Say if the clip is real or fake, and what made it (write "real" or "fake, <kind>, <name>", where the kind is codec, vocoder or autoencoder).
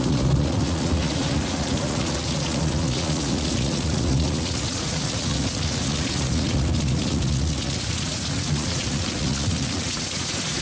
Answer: fake, vocoder, Vocos